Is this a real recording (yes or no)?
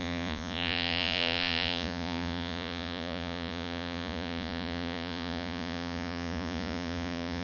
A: no